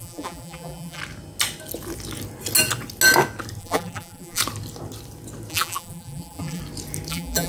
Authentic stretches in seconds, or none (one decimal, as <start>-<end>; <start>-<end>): 1.0-3.6; 4.4-5.5; 6.6-7.1